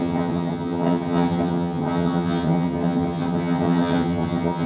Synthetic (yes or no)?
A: yes